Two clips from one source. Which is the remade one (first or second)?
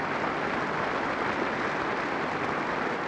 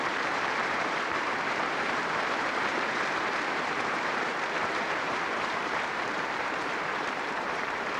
second